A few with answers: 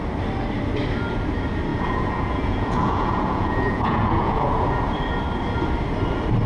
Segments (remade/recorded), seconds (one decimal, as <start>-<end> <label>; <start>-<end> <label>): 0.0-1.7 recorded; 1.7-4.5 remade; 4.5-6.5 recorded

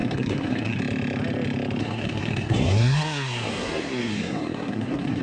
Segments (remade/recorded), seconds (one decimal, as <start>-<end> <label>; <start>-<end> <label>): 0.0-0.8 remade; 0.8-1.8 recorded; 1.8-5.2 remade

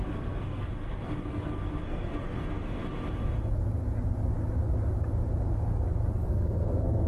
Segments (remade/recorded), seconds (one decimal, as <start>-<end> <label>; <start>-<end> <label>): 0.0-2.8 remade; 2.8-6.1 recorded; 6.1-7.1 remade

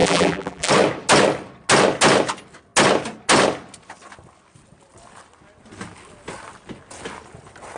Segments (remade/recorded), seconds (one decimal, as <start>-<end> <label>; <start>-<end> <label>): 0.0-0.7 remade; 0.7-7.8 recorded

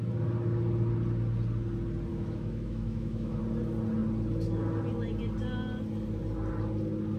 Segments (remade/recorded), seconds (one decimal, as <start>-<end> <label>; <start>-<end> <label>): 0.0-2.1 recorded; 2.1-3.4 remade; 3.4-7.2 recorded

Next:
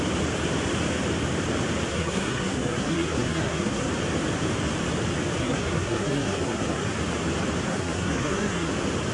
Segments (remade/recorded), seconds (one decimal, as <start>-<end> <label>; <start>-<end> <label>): 0.0-1.9 recorded; 1.9-3.9 remade; 3.9-5.4 recorded; 5.4-6.9 remade; 6.9-7.7 recorded; 7.7-8.7 remade; 8.7-9.1 recorded